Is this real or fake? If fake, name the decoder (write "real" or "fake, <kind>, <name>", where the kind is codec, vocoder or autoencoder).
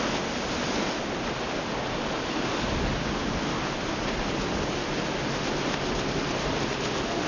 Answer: real